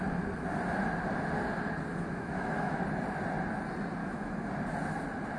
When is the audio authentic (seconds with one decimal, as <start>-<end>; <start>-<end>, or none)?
0.0-1.9; 2.8-4.0; 4.5-5.4